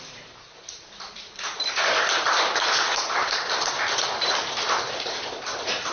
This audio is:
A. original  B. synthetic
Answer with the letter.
B